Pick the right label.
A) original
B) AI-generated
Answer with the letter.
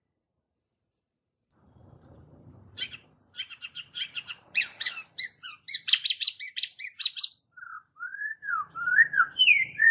B